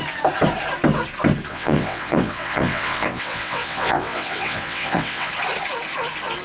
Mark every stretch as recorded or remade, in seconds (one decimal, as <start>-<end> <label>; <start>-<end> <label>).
0.0-1.5 recorded; 1.5-5.3 remade; 5.3-6.4 recorded